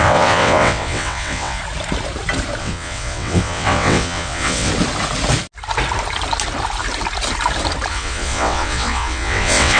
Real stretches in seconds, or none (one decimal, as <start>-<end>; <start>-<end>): 1.6-2.6; 4.7-7.9